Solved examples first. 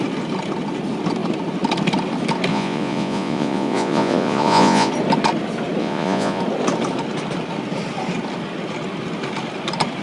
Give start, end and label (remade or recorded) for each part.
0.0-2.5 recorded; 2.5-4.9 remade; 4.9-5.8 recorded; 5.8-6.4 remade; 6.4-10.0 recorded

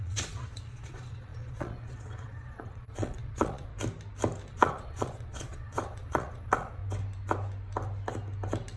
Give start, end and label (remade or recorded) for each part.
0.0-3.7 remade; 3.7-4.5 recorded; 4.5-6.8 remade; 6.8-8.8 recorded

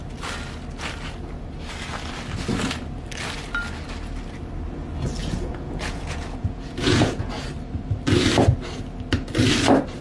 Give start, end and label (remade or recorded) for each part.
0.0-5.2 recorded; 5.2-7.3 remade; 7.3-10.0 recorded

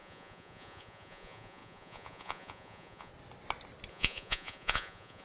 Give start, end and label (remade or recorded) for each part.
0.0-3.1 remade; 3.1-3.9 recorded; 3.9-5.2 remade

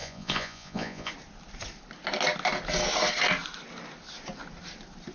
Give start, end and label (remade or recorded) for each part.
0.0-1.1 remade; 1.1-5.1 recorded

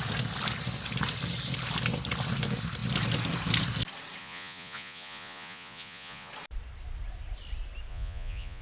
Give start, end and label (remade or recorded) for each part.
0.0-4.2 recorded; 4.2-6.3 remade; 6.3-7.9 recorded; 7.9-8.6 remade

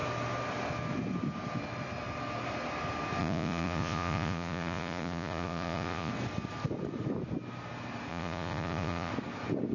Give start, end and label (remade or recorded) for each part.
0.0-3.2 recorded; 3.2-6.1 remade; 6.1-8.1 recorded; 8.1-9.1 remade; 9.1-9.7 recorded

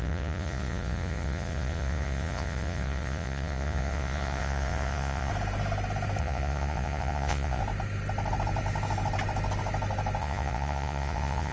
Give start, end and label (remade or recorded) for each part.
0.0-5.3 remade; 5.3-6.2 recorded; 6.2-7.6 remade; 7.6-10.2 recorded; 10.2-11.5 remade